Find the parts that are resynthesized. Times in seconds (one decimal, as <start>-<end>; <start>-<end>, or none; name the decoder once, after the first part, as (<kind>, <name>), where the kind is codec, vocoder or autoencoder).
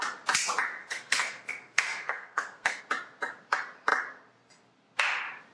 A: 0.8-2.8 (codec, SNAC)